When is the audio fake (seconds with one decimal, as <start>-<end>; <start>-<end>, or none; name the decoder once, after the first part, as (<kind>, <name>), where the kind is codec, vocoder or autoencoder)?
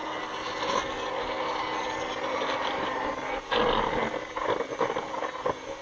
none